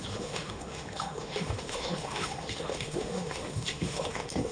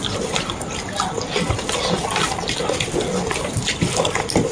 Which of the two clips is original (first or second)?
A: second